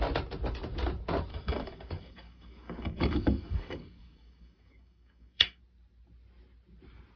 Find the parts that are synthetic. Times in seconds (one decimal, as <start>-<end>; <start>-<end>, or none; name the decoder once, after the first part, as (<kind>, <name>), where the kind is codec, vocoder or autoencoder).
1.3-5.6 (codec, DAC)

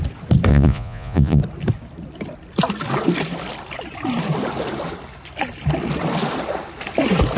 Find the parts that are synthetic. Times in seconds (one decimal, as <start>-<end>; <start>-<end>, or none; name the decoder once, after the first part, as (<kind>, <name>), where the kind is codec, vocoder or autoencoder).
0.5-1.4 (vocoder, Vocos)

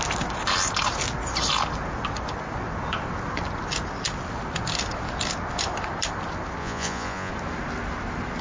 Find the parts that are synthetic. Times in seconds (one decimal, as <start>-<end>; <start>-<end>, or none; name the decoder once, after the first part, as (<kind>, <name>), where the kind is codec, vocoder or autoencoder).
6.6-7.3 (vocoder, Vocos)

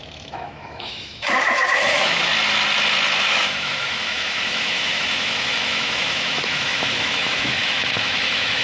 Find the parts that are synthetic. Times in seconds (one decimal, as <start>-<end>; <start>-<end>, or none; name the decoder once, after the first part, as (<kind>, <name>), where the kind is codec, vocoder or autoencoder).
0.0-2.3 (autoencoder, DAC-VAE); 3.2-8.6

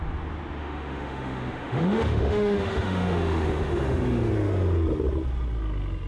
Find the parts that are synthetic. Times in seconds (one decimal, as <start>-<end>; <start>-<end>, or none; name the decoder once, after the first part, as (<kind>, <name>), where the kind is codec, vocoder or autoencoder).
0.6-4.3 (autoencoder, DAC-VAE)

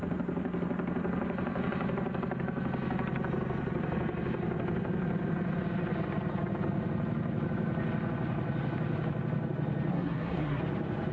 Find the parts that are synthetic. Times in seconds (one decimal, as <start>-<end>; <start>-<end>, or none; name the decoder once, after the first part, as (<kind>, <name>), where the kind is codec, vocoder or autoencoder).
9.9-10.6 (codec, SNAC)